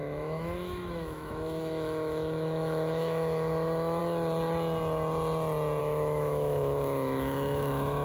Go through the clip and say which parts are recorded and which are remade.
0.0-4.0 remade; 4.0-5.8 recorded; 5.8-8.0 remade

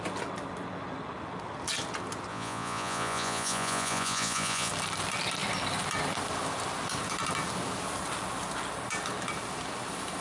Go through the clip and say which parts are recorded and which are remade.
0.0-2.3 recorded; 2.3-4.7 remade; 4.7-10.2 recorded

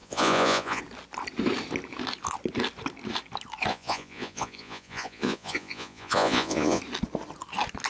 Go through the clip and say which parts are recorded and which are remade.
0.0-0.8 remade; 0.8-3.7 recorded; 3.7-6.8 remade; 6.8-7.9 recorded